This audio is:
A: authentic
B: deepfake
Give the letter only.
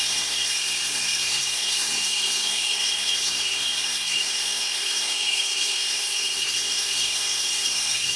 B